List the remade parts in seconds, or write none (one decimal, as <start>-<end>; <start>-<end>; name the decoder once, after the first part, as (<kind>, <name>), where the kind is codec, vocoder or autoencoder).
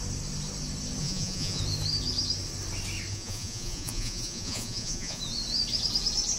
1.0-1.6 (vocoder, Vocos); 3.1-5.2